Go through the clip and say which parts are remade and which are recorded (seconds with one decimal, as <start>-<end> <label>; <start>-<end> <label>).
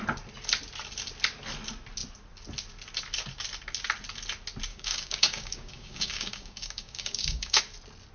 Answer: 0.0-4.7 recorded; 4.7-7.6 remade; 7.6-8.1 recorded